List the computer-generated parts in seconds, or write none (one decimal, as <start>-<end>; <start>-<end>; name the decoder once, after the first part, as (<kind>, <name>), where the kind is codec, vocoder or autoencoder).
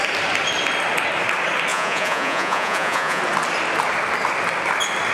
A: 1.7-3.2 (vocoder, Vocos)